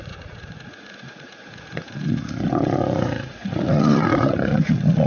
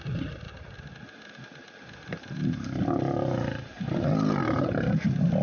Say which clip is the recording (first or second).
second